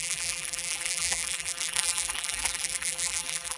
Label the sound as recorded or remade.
remade